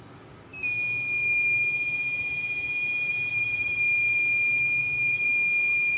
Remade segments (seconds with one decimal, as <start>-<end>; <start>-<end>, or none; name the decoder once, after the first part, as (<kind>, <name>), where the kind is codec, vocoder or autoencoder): 4.8-6.0 (vocoder, BigVGAN v2)